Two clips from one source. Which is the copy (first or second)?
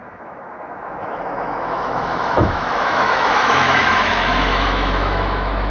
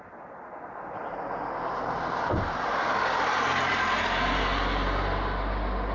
first